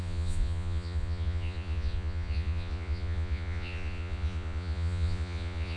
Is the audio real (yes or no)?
no